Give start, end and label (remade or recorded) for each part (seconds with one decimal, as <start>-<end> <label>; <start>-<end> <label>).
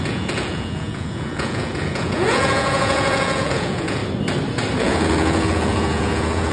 0.0-4.0 remade; 4.0-4.8 recorded; 4.8-6.5 remade